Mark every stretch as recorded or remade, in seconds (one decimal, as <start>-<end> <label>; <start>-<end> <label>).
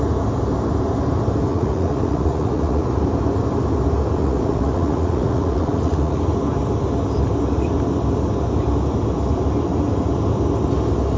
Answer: 0.0-1.5 recorded; 1.5-3.0 remade; 3.0-4.2 recorded; 4.2-6.2 remade; 6.2-11.2 recorded